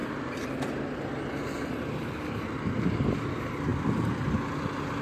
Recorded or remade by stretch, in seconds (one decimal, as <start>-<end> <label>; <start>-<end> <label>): 0.0-5.0 recorded